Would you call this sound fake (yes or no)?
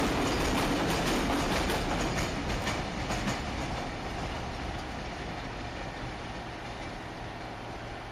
no